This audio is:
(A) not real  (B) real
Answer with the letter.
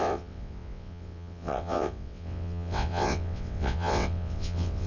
A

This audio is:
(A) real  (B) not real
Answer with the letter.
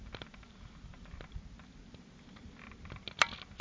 A